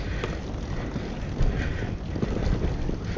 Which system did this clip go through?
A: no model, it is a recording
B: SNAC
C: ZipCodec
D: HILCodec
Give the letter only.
A